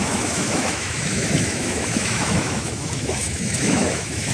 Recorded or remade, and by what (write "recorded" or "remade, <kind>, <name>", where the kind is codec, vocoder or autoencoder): remade, autoencoder, DAC-VAE